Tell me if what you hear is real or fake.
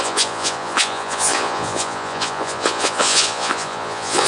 fake